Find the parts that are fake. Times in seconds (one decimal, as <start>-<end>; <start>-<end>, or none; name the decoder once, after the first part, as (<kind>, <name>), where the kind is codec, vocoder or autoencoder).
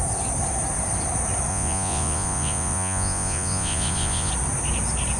1.5-4.3 (vocoder, Vocos)